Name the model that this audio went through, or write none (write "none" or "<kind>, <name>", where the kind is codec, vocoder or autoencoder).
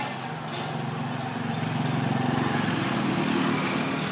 none